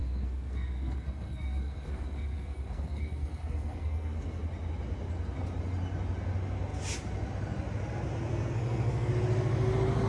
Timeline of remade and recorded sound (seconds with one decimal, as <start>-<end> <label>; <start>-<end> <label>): 0.0-4.4 remade; 4.4-8.3 recorded; 8.3-9.1 remade; 9.1-10.1 recorded